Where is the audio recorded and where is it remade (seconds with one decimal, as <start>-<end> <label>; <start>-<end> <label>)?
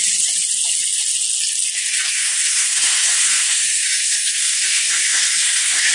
0.0-2.1 recorded; 2.1-5.9 remade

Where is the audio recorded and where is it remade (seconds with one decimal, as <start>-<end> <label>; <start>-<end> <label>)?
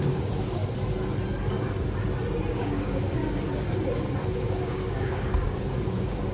0.0-0.6 remade; 0.6-2.5 recorded; 2.5-3.2 remade; 3.2-4.3 recorded; 4.3-6.3 remade